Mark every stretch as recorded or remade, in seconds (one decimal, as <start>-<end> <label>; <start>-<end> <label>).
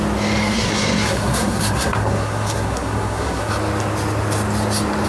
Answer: 0.0-0.4 recorded; 0.4-3.5 remade; 3.5-5.1 recorded